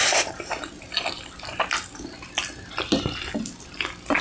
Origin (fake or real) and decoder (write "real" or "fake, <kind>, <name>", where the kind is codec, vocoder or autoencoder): real